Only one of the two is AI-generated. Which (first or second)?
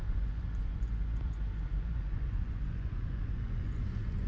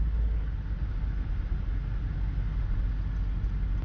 first